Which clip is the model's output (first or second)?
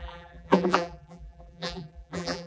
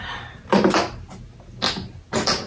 first